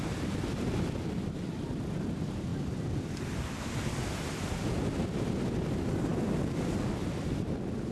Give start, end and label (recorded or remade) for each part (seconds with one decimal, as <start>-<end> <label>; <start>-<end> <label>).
0.0-7.9 recorded